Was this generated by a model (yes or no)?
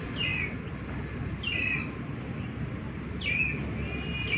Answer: no